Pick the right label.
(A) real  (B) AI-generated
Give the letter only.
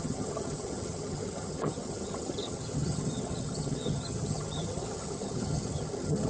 B